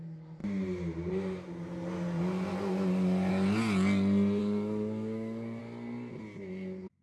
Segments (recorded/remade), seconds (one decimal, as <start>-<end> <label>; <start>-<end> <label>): 0.0-4.4 recorded; 4.4-5.6 remade; 5.6-7.0 recorded